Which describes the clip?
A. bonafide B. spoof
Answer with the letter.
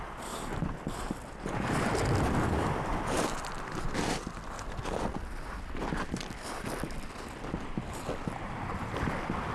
A